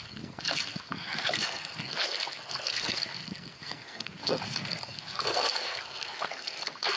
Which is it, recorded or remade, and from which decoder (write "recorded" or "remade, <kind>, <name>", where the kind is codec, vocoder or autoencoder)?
remade, codec, SNAC